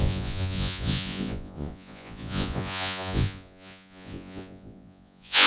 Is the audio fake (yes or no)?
yes